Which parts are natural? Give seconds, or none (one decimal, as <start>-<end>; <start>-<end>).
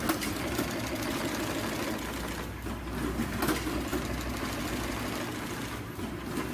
0.0-6.5